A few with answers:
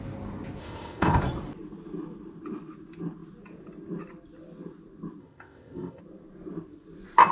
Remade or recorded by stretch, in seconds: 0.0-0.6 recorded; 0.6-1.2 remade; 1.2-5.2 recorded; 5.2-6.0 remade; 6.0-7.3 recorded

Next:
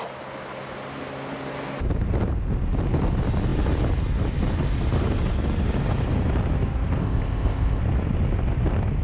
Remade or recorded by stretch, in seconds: 0.0-7.0 recorded; 7.0-7.8 remade; 7.8-9.0 recorded

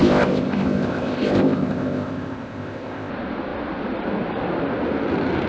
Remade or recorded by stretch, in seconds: 0.0-3.1 remade; 3.1-5.5 recorded

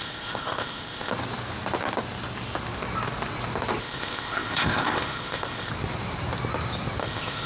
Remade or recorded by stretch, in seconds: 0.0-1.1 remade; 1.1-3.8 recorded; 3.8-5.7 remade; 5.7-7.0 recorded; 7.0-7.5 remade

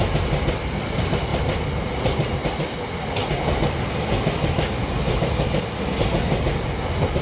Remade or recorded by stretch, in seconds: 0.0-7.2 recorded